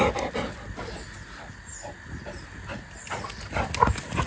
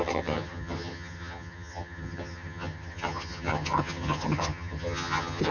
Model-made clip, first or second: second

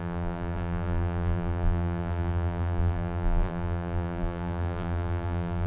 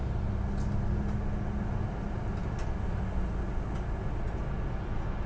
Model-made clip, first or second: first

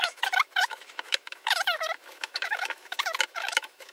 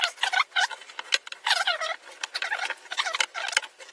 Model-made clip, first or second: first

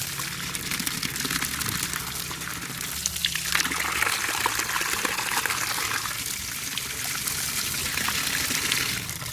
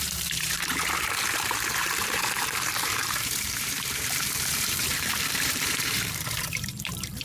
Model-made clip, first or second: second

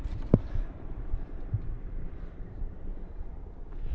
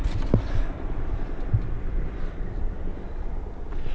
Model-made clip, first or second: first